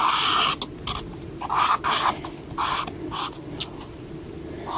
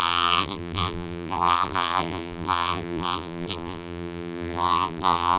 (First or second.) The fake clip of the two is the second